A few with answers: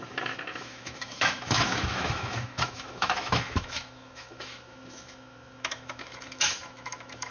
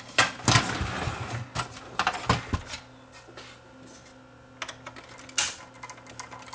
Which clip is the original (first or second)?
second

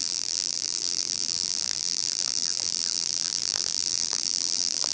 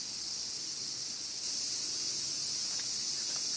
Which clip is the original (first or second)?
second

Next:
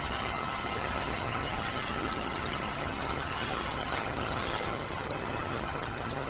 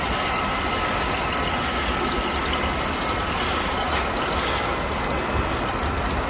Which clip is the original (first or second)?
second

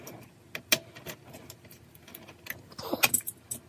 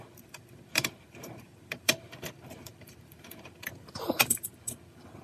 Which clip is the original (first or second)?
first